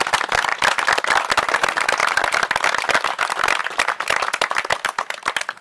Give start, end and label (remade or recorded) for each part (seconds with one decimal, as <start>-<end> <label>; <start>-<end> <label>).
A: 0.0-5.6 recorded